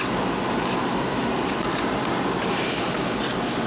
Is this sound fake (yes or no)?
no